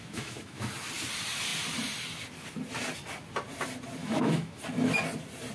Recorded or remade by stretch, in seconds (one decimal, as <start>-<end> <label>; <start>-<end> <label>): 0.0-0.7 remade; 0.7-4.0 recorded; 4.0-4.6 remade; 4.6-5.5 recorded